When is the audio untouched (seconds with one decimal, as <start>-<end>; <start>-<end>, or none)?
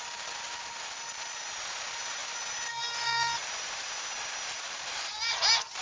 0.0-5.8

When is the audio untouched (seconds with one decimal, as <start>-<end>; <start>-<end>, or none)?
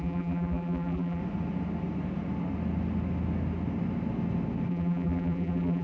1.2-4.7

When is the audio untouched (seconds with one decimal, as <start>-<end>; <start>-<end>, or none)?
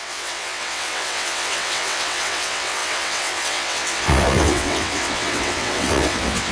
none